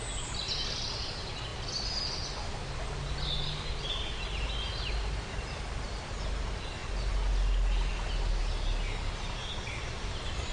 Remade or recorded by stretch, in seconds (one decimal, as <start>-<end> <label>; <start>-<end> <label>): 0.0-10.5 recorded